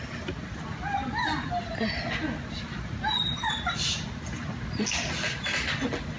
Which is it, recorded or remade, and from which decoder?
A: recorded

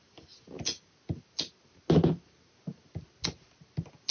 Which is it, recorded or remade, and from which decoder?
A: recorded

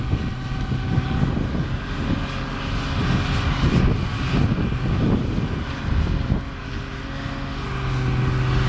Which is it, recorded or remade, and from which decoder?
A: recorded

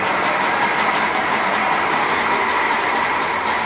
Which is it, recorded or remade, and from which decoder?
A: remade, vocoder, BigVGAN v2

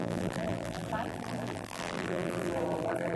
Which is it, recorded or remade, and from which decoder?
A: remade, vocoder, BigVGAN v2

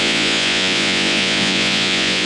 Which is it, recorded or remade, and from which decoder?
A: remade, vocoder, Vocos